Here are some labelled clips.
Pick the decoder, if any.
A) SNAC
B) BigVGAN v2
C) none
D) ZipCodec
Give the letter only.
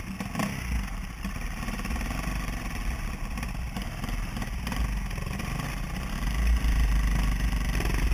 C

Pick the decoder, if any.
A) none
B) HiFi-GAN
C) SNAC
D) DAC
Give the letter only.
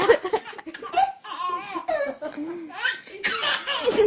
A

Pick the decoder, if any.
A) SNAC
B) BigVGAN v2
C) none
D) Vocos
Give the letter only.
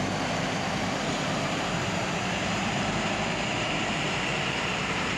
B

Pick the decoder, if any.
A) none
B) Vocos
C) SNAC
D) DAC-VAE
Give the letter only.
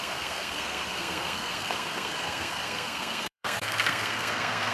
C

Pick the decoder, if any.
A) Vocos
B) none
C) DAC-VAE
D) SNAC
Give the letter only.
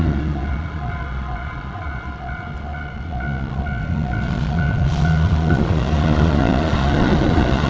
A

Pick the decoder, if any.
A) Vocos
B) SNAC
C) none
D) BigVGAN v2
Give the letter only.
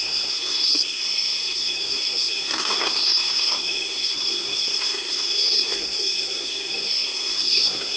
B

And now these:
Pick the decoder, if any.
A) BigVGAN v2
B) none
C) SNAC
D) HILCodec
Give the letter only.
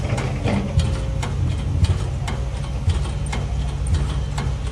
B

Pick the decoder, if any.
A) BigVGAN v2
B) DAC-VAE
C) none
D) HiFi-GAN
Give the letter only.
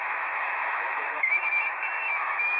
B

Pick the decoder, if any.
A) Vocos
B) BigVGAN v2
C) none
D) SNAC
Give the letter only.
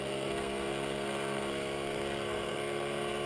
D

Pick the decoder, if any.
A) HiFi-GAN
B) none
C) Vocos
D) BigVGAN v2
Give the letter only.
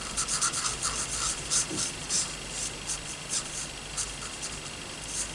B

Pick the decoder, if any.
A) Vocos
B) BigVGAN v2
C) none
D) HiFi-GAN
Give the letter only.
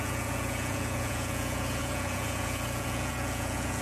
A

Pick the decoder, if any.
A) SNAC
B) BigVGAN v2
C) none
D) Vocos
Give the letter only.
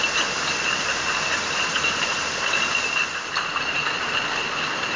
C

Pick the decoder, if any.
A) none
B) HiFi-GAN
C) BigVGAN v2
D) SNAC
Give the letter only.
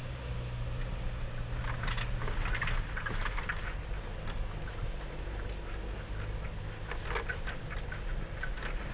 A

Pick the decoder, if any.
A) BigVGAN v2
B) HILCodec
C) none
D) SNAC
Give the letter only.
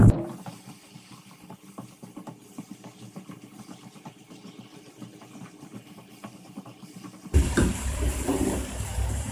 A